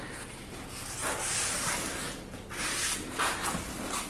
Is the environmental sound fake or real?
real